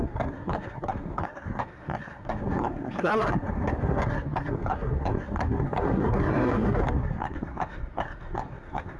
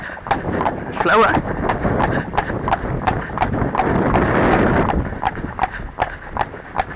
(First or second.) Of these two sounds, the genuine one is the second